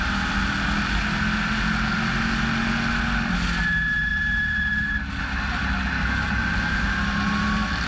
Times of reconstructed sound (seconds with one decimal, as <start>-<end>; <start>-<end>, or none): none